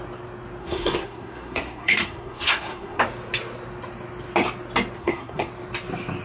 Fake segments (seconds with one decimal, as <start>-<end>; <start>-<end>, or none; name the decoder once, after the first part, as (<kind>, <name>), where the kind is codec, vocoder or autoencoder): 0.6-3.0 (codec, SNAC); 5.0-5.5